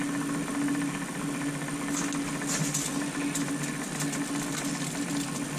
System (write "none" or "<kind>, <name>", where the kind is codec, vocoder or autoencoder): none